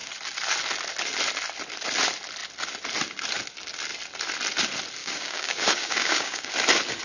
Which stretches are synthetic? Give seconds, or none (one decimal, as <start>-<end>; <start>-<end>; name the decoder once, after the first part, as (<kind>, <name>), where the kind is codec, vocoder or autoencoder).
5.0-6.5 (codec, DAC)

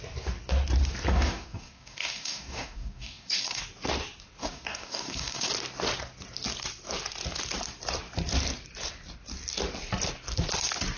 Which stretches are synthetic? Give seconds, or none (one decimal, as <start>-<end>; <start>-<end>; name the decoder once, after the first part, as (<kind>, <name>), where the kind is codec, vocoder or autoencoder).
1.1-3.6 (codec, DAC); 4.4-5.5

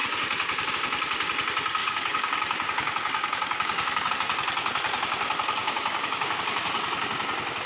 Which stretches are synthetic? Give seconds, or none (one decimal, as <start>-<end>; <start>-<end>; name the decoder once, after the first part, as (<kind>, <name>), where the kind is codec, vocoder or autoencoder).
1.8-4.1 (codec, DAC); 5.6-6.4

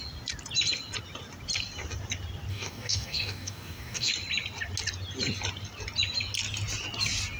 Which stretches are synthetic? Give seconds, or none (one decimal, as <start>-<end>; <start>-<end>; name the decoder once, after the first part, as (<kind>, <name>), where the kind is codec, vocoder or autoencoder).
2.5-4.1 (codec, DAC)

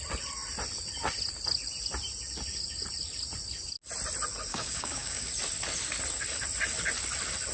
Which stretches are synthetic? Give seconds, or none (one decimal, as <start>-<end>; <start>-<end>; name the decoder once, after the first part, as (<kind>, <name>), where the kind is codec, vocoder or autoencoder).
4.5-5.3 (codec, DAC)

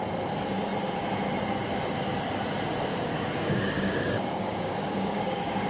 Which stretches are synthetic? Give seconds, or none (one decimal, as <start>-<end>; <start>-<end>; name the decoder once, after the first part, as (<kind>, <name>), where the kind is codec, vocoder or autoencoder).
2.9-5.7 (codec, DAC)

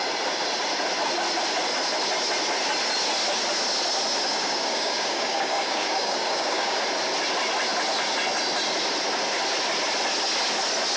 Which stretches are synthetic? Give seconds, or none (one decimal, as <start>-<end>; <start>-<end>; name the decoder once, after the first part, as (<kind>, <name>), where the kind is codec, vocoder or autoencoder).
4.3-6.8 (codec, DAC)

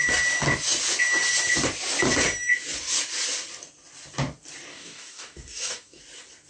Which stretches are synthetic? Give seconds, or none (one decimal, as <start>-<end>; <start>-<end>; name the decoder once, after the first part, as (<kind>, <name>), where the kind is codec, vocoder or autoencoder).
4.7-6.0 (codec, DAC)